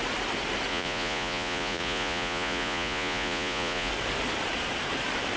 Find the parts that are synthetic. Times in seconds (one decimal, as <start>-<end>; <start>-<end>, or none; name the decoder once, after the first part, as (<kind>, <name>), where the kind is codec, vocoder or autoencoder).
0.7-3.9 (vocoder, Vocos)